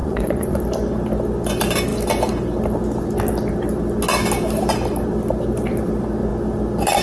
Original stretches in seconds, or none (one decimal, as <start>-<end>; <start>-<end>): 0.6-7.0